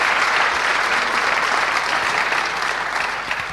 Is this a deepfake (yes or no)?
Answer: no